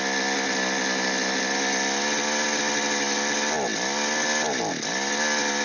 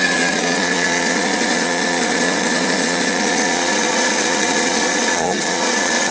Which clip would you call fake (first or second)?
second